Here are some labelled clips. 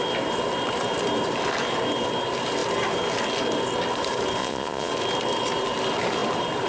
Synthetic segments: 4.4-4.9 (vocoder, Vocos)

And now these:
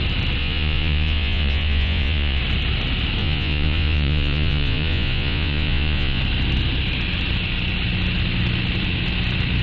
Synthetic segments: 0.4-2.4 (vocoder, Vocos); 3.2-6.2

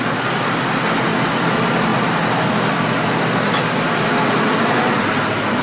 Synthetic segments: none

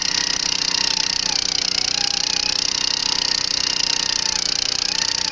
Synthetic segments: none

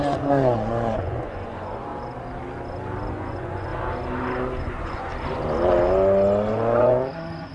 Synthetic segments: 0.0-1.9 (vocoder, Vocos); 3.1-3.7; 4.6-5.1; 6.5-7.5

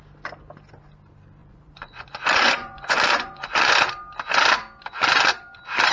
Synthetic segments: 1.4-3.7 (vocoder, Vocos)

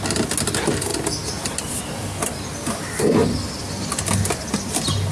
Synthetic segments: none

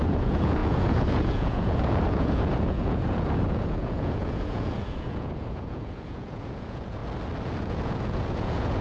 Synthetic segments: 0.0-7.0 (vocoder, Vocos); 7.6-8.8